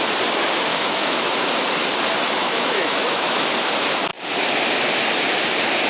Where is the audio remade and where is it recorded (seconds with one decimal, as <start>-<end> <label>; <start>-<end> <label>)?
0.0-0.7 recorded; 0.7-1.3 remade; 1.3-2.4 recorded; 2.4-3.4 remade; 3.4-5.9 recorded